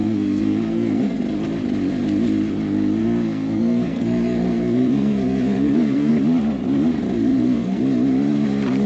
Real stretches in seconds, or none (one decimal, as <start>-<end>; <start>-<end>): 1.2-3.0; 6.1-7.3; 7.8-8.9